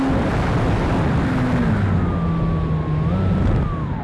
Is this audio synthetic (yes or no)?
no